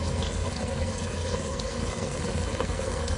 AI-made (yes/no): yes